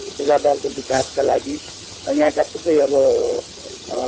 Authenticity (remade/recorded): remade